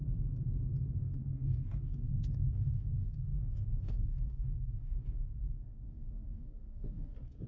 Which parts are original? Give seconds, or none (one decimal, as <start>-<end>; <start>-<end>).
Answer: 0.0-1.0